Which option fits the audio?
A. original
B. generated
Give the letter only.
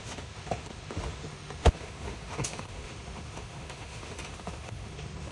B